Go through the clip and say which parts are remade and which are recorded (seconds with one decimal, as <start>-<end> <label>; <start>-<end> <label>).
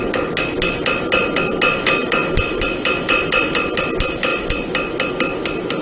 0.0-5.8 recorded